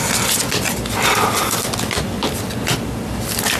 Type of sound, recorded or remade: recorded